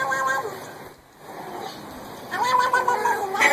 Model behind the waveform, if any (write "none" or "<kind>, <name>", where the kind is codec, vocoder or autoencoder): none